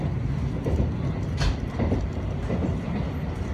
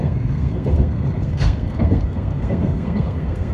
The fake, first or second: second